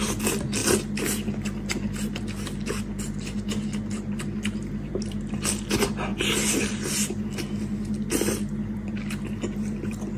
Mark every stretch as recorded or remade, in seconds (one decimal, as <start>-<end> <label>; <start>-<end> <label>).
0.0-10.2 recorded